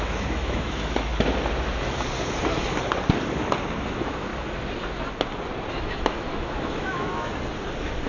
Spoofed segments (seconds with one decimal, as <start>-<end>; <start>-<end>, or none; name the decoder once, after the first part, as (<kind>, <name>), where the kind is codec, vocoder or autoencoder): 0.0-1.1 (autoencoder, DAC-VAE); 3.8-4.3; 5.7-7.3